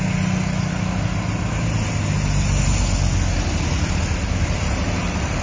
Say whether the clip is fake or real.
real